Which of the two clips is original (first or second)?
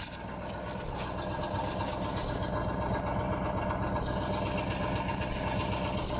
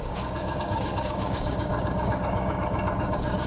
first